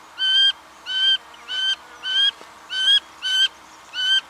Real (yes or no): yes